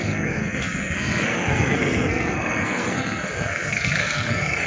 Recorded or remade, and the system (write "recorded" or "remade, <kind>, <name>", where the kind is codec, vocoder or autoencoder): remade, codec, SNAC